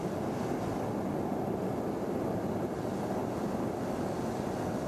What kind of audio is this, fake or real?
real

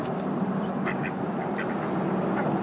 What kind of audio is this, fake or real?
real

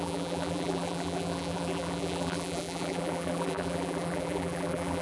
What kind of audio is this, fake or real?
fake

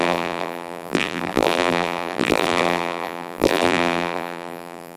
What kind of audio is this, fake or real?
fake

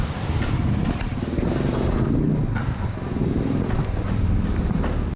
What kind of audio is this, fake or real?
real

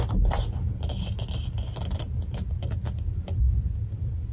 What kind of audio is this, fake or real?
real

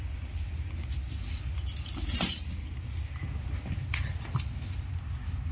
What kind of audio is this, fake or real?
real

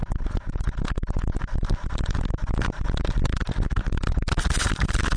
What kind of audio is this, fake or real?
real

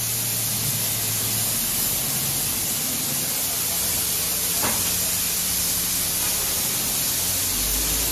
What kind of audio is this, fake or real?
real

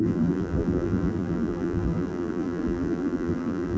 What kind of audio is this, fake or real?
fake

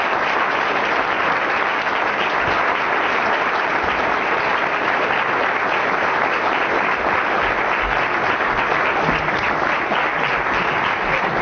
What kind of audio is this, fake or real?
real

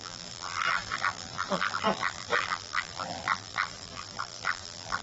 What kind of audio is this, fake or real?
fake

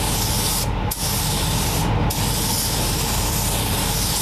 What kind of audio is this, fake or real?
real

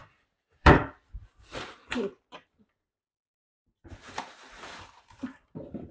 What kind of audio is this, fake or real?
fake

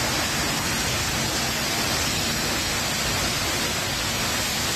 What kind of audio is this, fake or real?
real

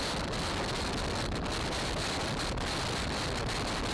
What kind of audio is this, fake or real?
real